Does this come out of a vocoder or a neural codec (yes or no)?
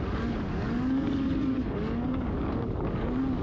yes